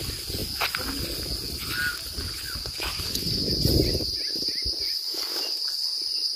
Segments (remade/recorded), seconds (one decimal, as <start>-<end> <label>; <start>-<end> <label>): 0.0-6.4 recorded